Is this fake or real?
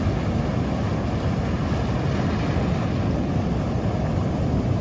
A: real